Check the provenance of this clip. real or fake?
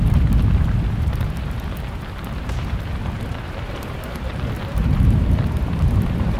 fake